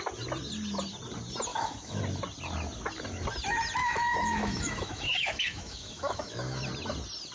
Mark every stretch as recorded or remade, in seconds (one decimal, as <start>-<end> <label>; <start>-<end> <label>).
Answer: 0.0-1.5 recorded; 1.5-2.0 remade; 2.0-3.8 recorded; 3.8-6.6 remade; 6.6-7.3 recorded